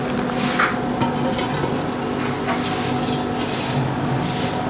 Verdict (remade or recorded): recorded